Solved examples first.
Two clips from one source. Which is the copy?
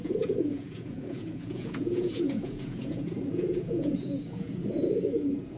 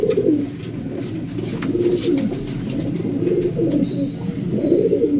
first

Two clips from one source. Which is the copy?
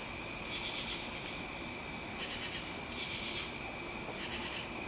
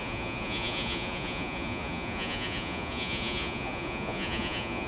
second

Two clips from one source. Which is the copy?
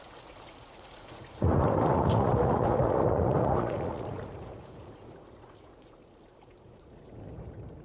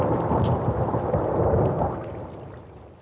first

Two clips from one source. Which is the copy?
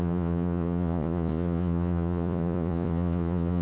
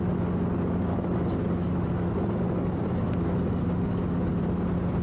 first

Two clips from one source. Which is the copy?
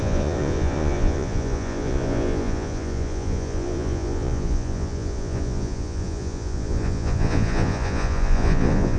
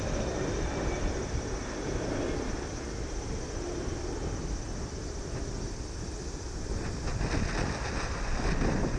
first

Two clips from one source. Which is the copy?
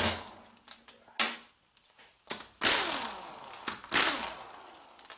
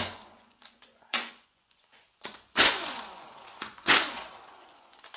second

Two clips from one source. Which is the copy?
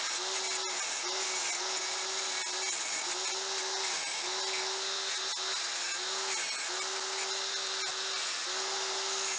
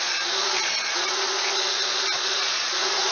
second